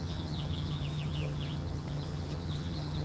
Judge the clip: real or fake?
fake